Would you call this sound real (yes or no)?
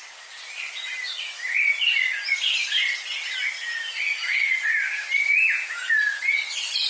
yes